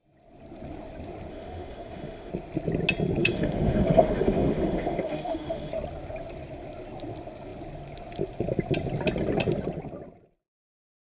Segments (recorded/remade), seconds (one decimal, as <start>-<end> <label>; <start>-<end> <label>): 0.0-1.3 recorded; 1.3-2.3 remade; 2.3-3.2 recorded; 3.2-5.7 remade; 5.7-11.1 recorded